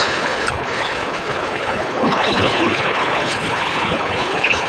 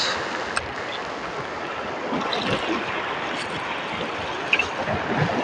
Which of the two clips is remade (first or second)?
first